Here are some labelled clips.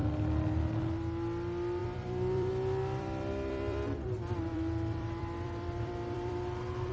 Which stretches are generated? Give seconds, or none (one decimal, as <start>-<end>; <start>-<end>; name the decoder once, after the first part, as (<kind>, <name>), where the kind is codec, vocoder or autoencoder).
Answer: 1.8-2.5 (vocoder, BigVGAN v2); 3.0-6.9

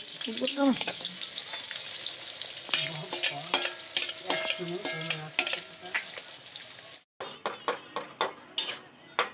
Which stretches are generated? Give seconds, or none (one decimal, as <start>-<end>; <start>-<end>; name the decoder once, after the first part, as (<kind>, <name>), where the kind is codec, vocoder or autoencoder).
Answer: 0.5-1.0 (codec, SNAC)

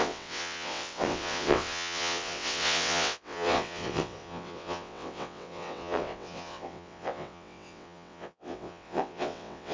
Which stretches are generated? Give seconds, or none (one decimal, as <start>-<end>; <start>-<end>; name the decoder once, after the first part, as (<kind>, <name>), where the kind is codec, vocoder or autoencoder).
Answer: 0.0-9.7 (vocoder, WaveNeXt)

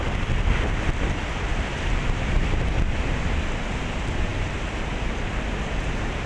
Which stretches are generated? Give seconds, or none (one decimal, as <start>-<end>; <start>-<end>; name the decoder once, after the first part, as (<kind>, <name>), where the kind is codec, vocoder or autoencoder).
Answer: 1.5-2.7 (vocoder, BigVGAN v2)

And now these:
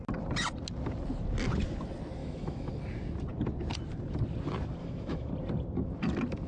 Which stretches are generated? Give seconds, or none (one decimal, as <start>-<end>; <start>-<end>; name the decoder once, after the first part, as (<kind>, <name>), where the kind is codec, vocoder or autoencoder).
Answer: 2.2-2.7 (autoencoder, DAC-VAE); 4.8-5.3

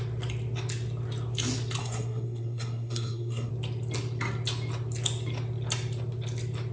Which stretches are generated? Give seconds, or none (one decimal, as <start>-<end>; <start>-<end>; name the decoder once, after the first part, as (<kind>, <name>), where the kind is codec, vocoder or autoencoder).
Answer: 1.8-3.5 (codec, SNAC)